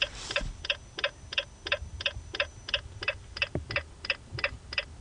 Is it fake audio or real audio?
fake